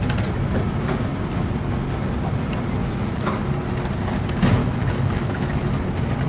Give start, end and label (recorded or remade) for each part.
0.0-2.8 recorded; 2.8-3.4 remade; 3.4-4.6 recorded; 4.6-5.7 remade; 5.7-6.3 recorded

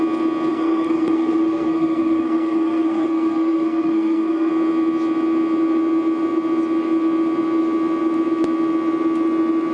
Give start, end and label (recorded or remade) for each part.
0.0-0.5 recorded; 0.5-4.5 remade; 4.5-9.7 recorded

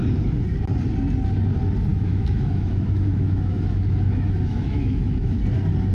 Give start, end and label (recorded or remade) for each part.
0.0-1.9 recorded; 1.9-5.4 remade; 5.4-5.9 recorded

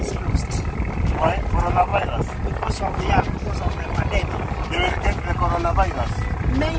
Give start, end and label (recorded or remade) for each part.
0.0-6.8 recorded

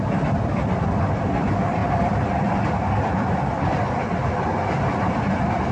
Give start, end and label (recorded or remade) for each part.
0.0-5.7 recorded